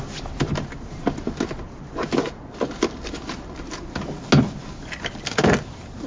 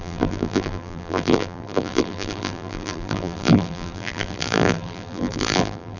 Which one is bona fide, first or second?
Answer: first